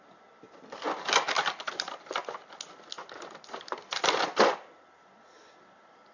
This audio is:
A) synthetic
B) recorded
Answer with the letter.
B